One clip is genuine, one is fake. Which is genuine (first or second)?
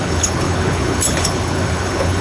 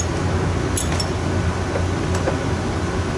second